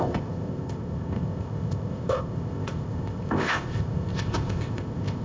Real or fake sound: fake